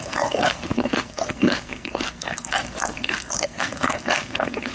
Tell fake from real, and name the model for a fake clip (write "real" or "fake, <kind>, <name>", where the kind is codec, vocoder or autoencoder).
fake, codec, SNAC